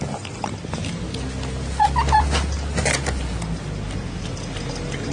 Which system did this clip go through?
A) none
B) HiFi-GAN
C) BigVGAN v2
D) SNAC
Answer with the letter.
A